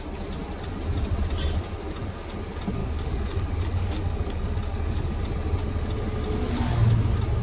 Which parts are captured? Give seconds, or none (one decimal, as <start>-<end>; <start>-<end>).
0.0-2.8; 5.2-7.4